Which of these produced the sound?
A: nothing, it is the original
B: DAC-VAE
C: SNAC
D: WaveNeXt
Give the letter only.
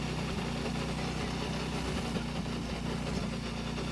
A